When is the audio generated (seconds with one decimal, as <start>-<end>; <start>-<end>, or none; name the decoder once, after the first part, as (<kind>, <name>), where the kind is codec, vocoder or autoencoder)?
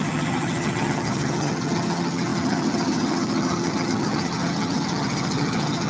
0.0-5.9 (vocoder, HiFi-GAN)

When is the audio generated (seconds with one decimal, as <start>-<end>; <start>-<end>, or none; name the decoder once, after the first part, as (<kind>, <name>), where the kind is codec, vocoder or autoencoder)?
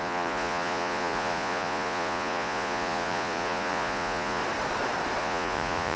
0.0-4.4 (vocoder, Vocos); 5.2-6.0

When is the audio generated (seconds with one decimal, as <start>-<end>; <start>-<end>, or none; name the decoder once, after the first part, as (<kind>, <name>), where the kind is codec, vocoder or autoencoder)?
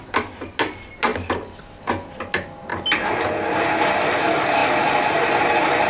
none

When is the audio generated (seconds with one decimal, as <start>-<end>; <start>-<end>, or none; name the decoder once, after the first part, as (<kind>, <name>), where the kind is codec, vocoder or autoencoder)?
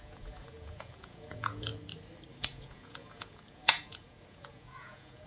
0.0-1.7 (vocoder, Vocos); 2.3-5.3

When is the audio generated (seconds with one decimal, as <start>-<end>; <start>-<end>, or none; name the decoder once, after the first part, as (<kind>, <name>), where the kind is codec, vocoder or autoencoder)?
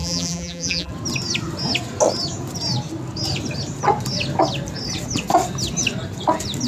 0.0-0.9 (vocoder, BigVGAN v2)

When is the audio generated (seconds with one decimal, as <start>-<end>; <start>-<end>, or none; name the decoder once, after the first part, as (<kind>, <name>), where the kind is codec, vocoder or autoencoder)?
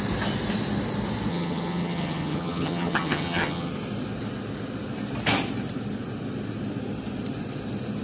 1.3-3.7 (vocoder, HiFi-GAN)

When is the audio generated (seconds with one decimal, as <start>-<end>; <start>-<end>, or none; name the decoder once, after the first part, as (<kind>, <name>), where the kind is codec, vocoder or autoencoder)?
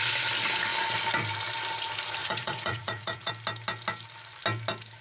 2.2-3.3 (vocoder, Vocos)